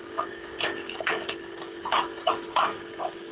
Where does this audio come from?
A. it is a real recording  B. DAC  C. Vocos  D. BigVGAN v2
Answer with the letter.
B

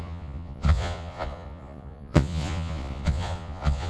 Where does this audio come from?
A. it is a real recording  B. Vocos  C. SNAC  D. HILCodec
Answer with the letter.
B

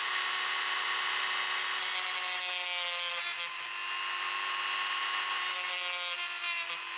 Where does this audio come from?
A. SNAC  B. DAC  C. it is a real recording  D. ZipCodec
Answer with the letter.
C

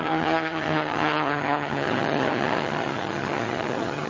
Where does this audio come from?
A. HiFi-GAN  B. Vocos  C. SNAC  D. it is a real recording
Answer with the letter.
A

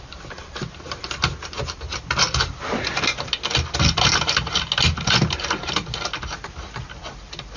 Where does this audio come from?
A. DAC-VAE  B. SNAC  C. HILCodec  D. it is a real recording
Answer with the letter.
D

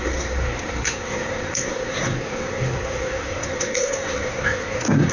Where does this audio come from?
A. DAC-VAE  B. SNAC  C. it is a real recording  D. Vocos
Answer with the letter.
B